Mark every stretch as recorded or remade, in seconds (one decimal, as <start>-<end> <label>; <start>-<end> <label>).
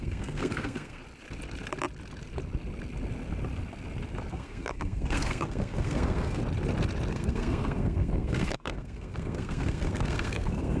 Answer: 0.0-1.0 remade; 1.0-4.3 recorded; 4.3-6.4 remade; 6.4-7.1 recorded; 7.1-10.8 remade